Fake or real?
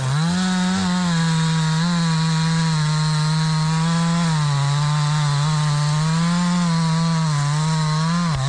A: real